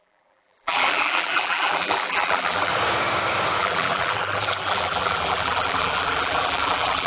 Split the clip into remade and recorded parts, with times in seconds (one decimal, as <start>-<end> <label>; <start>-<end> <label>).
0.0-2.7 remade; 2.7-3.6 recorded; 3.6-7.1 remade